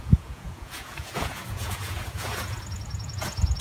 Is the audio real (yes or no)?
no